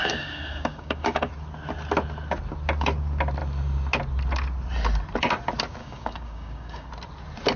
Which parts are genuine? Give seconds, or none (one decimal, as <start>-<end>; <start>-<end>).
1.3-5.8; 6.9-7.6